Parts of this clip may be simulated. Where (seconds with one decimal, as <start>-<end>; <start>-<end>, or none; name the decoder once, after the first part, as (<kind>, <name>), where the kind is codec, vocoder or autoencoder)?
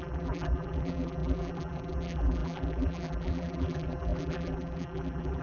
0.0-5.4 (vocoder, BigVGAN v2)